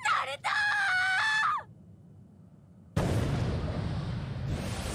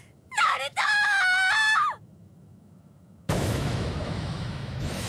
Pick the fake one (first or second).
second